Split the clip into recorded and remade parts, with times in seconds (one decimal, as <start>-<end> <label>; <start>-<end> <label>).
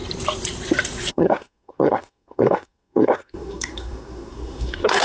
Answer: 0.0-1.1 recorded; 1.1-5.0 remade